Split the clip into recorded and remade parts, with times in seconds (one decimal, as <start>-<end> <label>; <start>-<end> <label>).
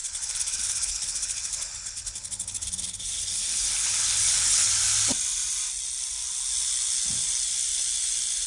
0.0-4.7 remade; 4.7-8.5 recorded